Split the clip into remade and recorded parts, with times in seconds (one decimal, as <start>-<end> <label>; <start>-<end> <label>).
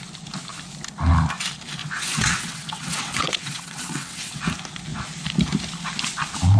0.0-1.8 recorded; 1.8-4.4 remade; 4.4-6.6 recorded